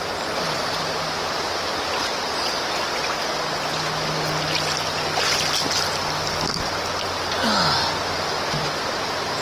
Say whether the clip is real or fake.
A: real